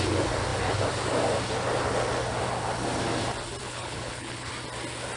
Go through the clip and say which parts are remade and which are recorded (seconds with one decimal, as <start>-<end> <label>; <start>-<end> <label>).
0.0-3.6 recorded; 3.6-4.5 remade; 4.5-5.2 recorded